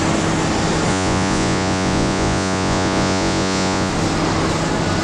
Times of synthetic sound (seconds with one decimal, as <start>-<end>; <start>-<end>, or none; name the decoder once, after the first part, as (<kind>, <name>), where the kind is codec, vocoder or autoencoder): 0.9-3.9 (vocoder, Vocos)